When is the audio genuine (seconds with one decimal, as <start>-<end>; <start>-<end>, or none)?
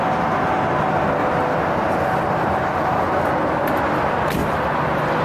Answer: 0.0-1.2; 3.0-4.4